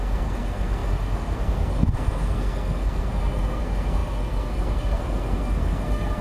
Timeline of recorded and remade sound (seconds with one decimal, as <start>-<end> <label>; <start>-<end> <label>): 0.0-6.2 remade